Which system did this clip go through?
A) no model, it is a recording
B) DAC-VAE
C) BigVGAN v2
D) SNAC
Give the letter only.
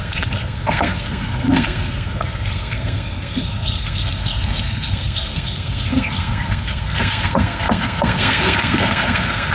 D